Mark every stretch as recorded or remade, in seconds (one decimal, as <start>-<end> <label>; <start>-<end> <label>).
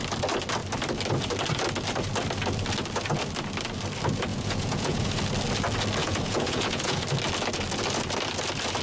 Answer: 0.0-4.3 recorded; 4.3-5.2 remade; 5.2-6.0 recorded; 6.0-7.0 remade; 7.0-8.8 recorded